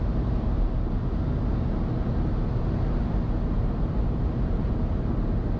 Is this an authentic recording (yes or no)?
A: yes